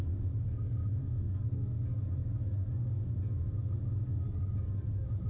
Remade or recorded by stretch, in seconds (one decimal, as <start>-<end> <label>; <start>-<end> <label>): 0.0-1.0 recorded; 1.0-1.8 remade; 1.8-5.3 recorded